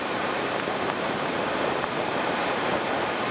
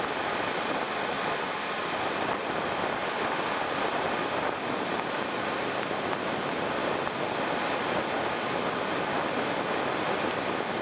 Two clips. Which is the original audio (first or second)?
second